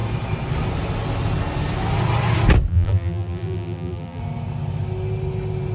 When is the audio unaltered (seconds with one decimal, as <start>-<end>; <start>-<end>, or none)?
0.0-2.7; 4.2-5.7